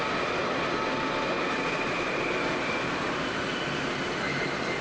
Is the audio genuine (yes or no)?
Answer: yes